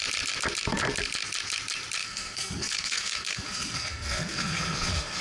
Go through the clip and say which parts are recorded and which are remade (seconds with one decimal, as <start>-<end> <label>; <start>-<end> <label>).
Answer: 0.0-2.0 recorded; 2.0-5.2 remade

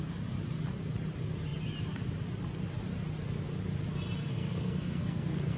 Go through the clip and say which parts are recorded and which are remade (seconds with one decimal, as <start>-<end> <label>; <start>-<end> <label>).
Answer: 0.0-4.3 recorded; 4.3-5.6 remade

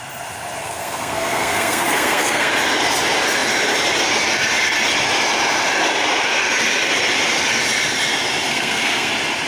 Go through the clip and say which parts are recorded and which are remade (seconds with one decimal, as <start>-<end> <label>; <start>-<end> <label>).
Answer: 0.0-0.6 recorded; 0.6-2.5 remade; 2.5-8.5 recorded; 8.5-9.1 remade; 9.1-9.5 recorded